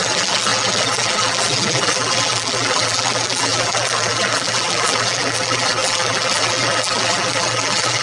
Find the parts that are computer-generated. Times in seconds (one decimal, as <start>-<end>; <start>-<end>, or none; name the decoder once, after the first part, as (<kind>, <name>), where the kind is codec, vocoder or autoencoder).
0.0-8.0 (vocoder, BigVGAN v2)